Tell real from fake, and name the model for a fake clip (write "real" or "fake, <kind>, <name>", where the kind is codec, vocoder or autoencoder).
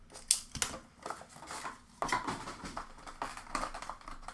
real